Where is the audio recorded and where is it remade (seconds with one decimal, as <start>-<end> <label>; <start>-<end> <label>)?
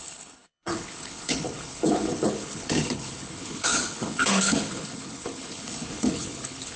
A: 0.0-6.8 remade